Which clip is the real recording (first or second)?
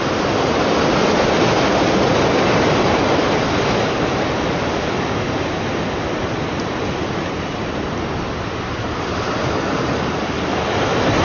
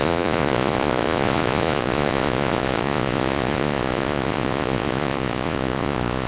first